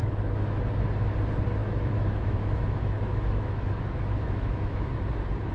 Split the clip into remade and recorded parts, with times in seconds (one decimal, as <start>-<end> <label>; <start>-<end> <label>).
0.0-0.6 remade; 0.6-1.6 recorded; 1.6-4.9 remade; 4.9-5.5 recorded